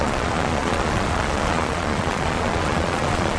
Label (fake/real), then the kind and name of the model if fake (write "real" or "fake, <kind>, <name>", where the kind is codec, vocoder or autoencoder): fake, vocoder, Vocos